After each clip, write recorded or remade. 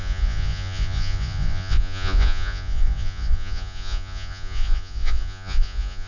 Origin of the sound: remade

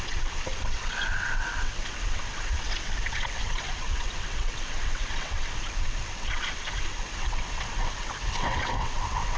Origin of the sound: remade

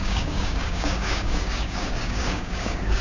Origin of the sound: remade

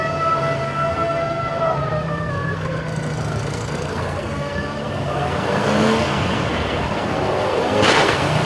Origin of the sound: remade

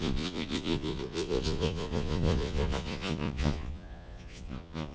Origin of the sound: remade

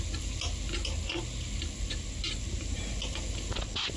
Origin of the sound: recorded